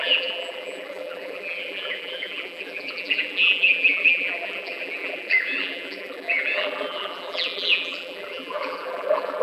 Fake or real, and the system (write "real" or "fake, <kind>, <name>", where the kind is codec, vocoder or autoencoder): fake, vocoder, BigVGAN v2